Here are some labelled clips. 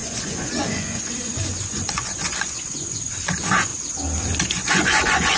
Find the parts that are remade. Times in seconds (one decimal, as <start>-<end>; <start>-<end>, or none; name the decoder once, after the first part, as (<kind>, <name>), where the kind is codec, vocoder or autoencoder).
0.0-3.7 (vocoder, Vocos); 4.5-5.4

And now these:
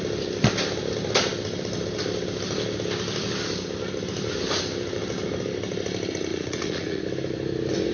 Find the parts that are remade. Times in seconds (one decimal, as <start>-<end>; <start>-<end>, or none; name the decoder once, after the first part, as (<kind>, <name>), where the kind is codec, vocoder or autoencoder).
6.3-7.0 (vocoder, Vocos)

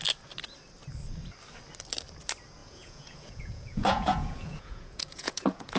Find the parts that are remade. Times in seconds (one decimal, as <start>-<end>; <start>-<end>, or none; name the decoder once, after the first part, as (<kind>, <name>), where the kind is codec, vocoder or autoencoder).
2.6-5.8 (vocoder, Vocos)

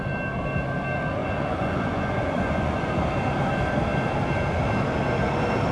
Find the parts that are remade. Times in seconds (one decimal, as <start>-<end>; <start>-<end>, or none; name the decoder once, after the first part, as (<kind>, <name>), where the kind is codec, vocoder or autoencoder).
1.2-2.9 (vocoder, Vocos)

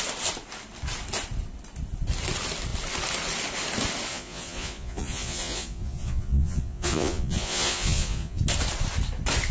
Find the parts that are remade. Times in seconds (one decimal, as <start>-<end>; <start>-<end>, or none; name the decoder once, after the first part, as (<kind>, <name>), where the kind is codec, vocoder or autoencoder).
4.1-8.4 (vocoder, Vocos)

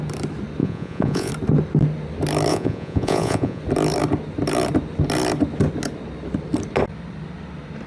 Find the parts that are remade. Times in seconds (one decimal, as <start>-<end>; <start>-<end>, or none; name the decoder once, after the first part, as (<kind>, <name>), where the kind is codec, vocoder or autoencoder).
0.6-1.3 (vocoder, Vocos); 2.5-3.6

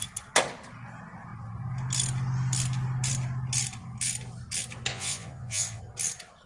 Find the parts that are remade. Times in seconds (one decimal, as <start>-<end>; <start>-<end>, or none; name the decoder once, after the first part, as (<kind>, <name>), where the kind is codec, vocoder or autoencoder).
4.9-5.8 (vocoder, Vocos)